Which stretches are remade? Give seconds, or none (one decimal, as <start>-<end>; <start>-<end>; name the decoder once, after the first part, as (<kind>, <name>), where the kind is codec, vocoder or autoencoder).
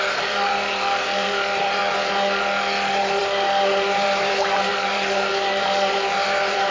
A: 0.0-1.8 (vocoder, BigVGAN v2); 3.2-6.7